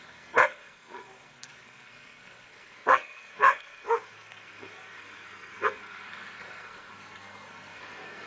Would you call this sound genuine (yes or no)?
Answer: no